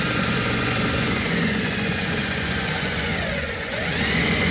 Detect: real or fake fake